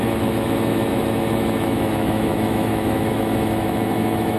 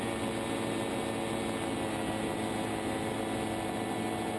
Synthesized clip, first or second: first